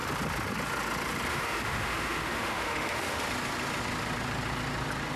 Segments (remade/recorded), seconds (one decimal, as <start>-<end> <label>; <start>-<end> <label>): 0.0-1.3 recorded; 1.3-3.2 remade; 3.2-5.2 recorded